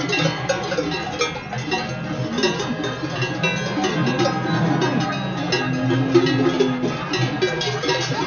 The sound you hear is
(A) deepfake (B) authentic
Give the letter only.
B